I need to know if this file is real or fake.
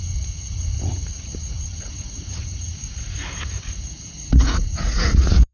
fake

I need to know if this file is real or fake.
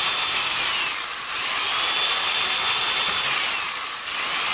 real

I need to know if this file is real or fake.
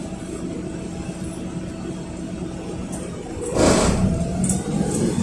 real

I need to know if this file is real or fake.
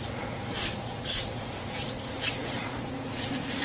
fake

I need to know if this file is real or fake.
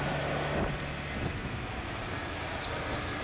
real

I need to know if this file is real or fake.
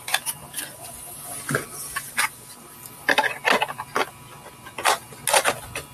real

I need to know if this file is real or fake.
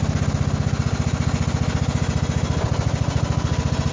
real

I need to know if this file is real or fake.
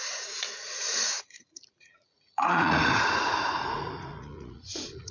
fake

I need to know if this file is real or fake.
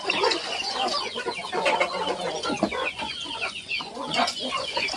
fake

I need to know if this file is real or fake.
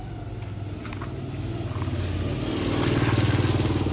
real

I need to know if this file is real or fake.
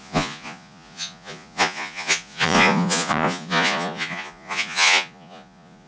fake